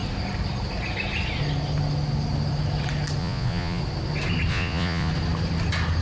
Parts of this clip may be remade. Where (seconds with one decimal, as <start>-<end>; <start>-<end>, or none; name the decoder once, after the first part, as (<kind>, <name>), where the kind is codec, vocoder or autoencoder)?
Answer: 3.2-3.8 (vocoder, Vocos); 4.5-5.1

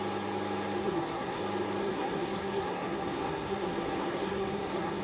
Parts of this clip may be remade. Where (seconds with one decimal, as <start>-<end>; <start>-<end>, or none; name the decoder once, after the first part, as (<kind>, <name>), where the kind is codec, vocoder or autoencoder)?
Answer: 0.8-1.4 (codec, SNAC); 1.8-5.0

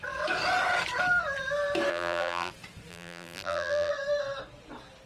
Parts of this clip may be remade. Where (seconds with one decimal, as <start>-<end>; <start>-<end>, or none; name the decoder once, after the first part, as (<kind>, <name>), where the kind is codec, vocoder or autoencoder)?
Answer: 1.9-2.5 (vocoder, BigVGAN v2); 2.9-3.9

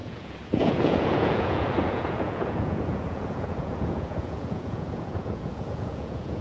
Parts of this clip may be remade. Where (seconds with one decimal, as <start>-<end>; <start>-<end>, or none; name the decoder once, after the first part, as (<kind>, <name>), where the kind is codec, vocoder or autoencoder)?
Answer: 0.0-6.4 (vocoder, Vocos)